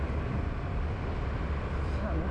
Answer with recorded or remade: remade